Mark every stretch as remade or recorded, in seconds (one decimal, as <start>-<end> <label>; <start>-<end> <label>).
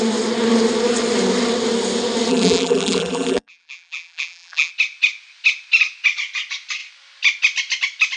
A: 0.0-2.3 recorded; 2.3-4.7 remade; 4.7-8.2 recorded